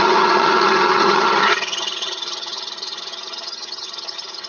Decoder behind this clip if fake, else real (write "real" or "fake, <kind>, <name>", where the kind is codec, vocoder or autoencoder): fake, vocoder, HiFi-GAN